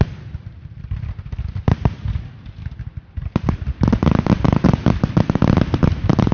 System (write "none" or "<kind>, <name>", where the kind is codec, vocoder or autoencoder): none